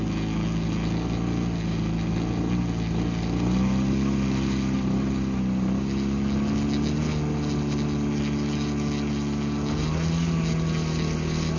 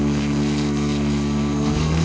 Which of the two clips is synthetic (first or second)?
second